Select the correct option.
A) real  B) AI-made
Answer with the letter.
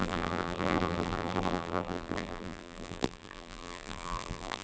B